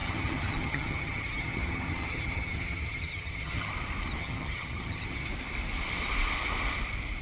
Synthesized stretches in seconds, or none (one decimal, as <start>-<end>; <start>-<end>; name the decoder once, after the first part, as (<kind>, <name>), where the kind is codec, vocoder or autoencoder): 0.0-3.7 (vocoder, HiFi-GAN); 4.2-5.3